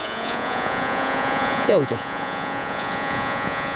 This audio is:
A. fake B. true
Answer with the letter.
A